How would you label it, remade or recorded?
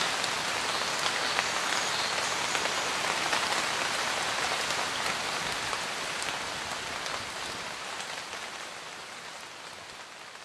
recorded